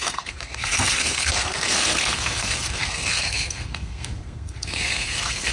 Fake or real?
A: fake